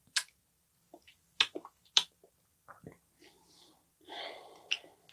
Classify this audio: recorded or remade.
recorded